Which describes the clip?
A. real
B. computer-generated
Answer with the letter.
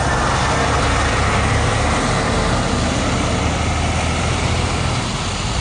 A